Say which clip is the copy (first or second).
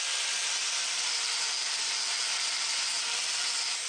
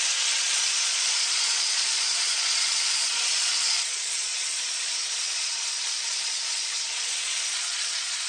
second